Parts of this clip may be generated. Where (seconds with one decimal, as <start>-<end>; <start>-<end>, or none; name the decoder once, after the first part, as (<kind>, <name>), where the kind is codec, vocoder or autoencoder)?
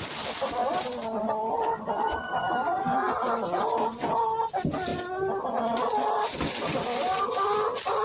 none